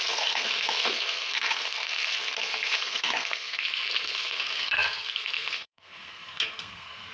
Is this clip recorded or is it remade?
remade